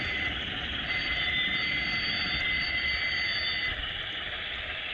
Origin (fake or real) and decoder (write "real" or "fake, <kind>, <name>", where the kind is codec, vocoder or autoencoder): fake, vocoder, BigVGAN v2